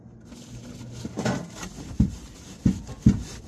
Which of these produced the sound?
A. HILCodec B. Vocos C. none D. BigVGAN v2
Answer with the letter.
C